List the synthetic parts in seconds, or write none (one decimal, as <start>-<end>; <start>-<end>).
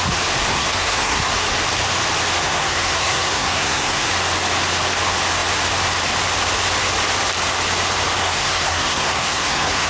0.5-1.3; 2.4-4.1; 8.2-9.9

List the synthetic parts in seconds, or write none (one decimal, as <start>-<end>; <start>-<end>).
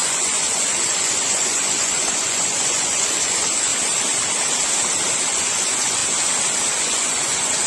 0.0-3.7; 5.3-6.0; 6.8-7.7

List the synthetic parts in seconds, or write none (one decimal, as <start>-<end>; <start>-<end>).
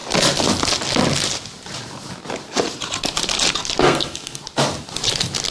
3.8-4.4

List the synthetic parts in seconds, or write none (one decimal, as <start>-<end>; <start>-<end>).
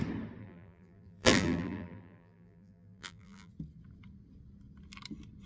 0.4-3.5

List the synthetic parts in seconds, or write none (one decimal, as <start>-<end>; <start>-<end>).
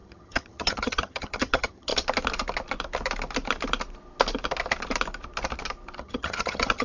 0.0-1.9; 6.0-6.8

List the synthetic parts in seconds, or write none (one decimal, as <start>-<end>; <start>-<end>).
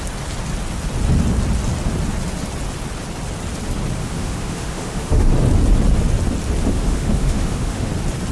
4.0-5.3; 6.7-7.9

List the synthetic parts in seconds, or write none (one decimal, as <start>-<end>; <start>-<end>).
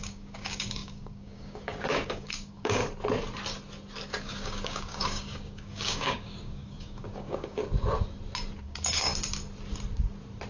0.0-2.8; 4.2-7.6; 8.6-9.1